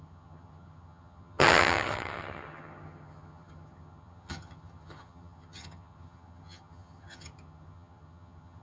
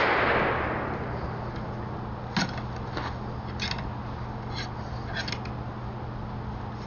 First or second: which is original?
second